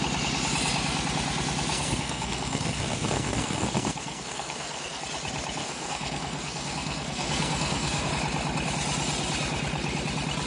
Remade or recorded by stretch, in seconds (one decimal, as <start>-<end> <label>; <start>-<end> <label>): 0.0-1.7 recorded; 1.7-5.0 remade; 5.0-5.6 recorded; 5.6-8.1 remade; 8.1-10.5 recorded